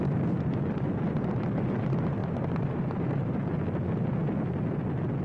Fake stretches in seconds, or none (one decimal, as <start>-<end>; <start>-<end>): 2.2-3.4